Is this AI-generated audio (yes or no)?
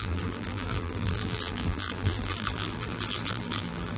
yes